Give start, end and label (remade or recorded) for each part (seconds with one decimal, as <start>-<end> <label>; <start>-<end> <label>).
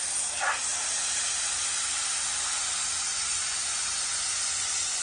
0.0-3.1 recorded; 3.1-5.0 remade